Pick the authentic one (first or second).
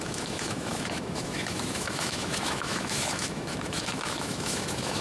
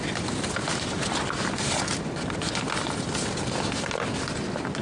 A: second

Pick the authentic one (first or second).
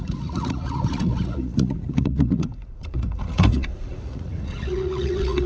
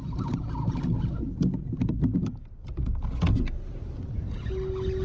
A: second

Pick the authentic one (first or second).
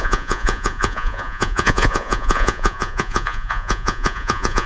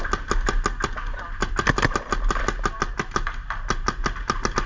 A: second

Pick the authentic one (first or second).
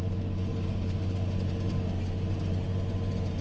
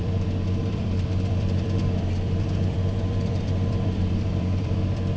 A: first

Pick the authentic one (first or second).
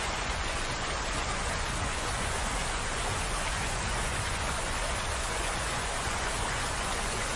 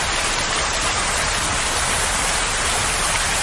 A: second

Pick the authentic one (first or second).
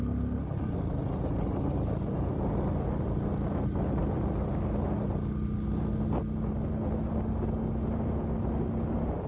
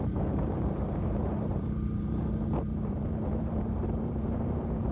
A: first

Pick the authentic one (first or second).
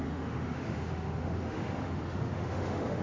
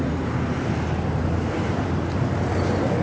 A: second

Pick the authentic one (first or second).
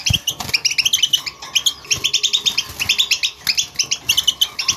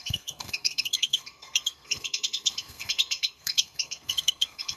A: first